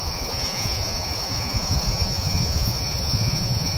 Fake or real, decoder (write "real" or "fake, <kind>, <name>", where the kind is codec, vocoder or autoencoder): fake, vocoder, Vocos